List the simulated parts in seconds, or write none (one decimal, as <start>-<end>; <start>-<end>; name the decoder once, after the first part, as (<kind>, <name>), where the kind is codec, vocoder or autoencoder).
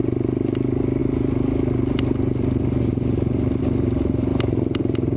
none